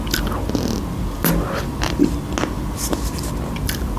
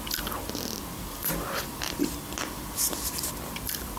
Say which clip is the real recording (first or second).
first